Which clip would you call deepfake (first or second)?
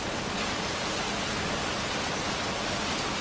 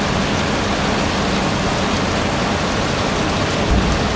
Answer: first